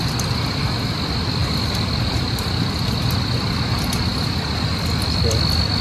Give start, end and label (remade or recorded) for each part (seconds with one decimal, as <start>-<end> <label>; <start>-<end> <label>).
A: 0.0-1.4 recorded; 1.4-3.0 remade; 3.0-5.8 recorded